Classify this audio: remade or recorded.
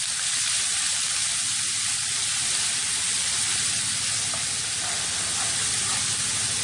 remade